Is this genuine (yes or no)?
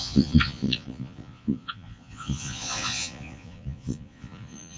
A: no